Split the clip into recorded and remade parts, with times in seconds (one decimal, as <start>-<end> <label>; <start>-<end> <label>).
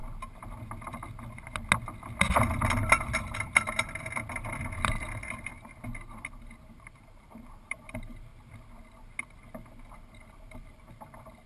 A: 0.0-3.2 recorded; 3.2-5.5 remade; 5.5-6.1 recorded; 6.1-8.3 remade; 8.3-9.9 recorded; 9.9-11.5 remade